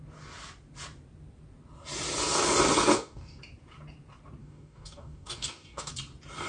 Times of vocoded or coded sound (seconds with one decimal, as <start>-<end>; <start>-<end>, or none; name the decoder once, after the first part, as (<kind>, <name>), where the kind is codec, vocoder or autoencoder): 2.9-3.4 (codec, DAC); 4.4-5.9